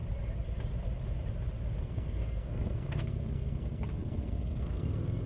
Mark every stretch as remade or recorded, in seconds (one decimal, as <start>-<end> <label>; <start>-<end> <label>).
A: 0.0-1.8 recorded; 1.8-5.3 remade